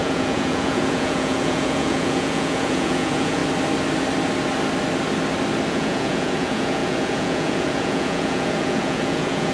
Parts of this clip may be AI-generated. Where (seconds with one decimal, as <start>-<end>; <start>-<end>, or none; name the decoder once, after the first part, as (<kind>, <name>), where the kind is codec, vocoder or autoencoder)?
0.0-3.4 (vocoder, Vocos); 5.7-9.5